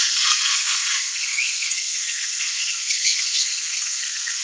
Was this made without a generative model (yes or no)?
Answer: no